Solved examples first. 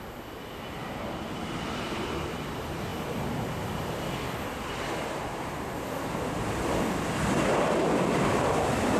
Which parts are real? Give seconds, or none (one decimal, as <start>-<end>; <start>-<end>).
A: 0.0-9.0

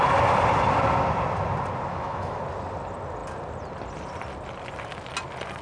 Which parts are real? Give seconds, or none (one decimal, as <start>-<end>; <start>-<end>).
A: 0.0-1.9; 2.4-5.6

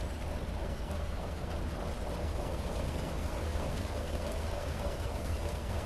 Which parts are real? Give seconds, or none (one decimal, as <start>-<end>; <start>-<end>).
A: 0.0-0.6; 1.5-2.2

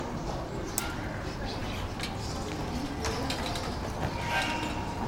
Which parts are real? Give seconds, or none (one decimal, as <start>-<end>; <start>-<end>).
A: 0.0-5.1

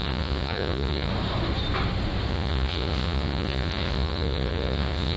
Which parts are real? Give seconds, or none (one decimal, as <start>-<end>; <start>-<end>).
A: 1.1-2.3

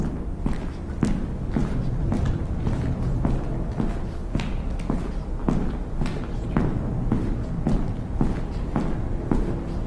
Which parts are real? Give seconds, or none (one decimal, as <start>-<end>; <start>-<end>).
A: 0.0-9.9

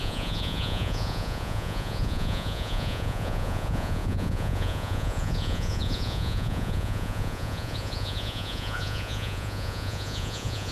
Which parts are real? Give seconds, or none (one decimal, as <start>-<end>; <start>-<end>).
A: none